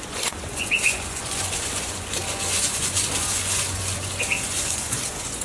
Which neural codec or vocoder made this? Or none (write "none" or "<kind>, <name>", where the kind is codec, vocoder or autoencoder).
vocoder, Vocos